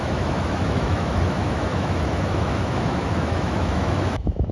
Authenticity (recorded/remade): remade